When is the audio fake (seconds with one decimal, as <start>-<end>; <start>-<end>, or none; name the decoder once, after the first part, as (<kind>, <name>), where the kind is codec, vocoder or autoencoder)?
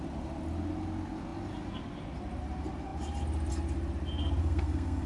4.4-5.1 (codec, SNAC)